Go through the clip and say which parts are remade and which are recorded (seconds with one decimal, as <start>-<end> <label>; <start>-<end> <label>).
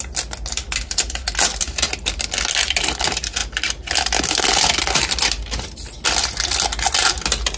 0.0-7.6 recorded